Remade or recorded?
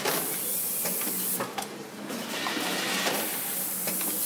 recorded